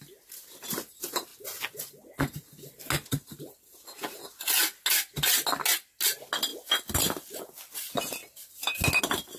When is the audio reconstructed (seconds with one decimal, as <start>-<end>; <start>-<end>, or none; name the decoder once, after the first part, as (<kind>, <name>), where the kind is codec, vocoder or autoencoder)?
none